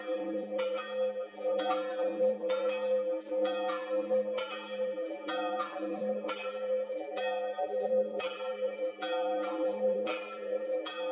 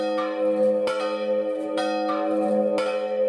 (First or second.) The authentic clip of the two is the second